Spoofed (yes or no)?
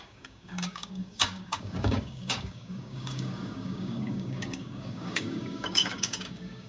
yes